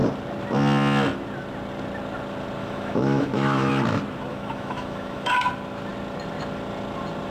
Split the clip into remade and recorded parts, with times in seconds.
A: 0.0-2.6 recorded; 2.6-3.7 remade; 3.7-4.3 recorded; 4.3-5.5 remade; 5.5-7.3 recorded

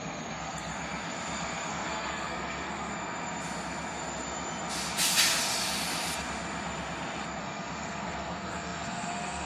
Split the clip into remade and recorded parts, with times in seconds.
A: 0.0-0.7 remade; 0.7-1.7 recorded; 1.7-2.9 remade; 2.9-7.4 recorded; 7.4-9.5 remade

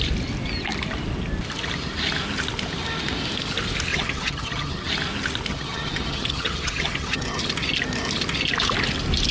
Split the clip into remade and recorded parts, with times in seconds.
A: 0.0-3.9 recorded; 3.9-4.9 remade; 4.9-5.5 recorded; 5.5-7.4 remade; 7.4-9.3 recorded

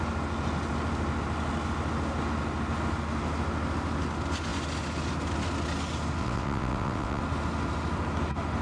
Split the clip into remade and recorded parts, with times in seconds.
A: 0.0-6.2 recorded; 6.2-7.2 remade; 7.2-8.6 recorded

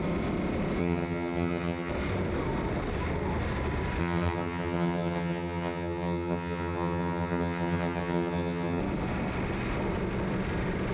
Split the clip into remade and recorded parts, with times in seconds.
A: 0.0-0.8 recorded; 0.8-1.9 remade; 1.9-4.0 recorded; 4.0-8.8 remade; 8.8-10.9 recorded